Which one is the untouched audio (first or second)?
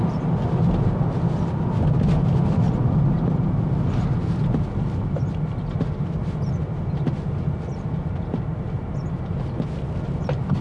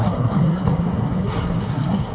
first